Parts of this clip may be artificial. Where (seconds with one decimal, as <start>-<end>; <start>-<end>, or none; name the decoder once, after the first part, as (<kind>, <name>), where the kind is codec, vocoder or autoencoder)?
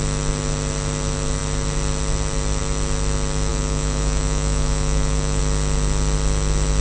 3.5-5.4 (autoencoder, DAC-VAE)